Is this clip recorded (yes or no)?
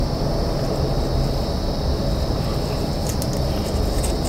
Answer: yes